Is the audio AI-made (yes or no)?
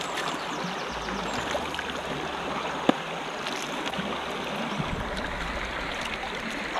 no